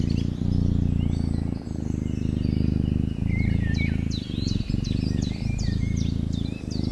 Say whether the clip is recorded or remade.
recorded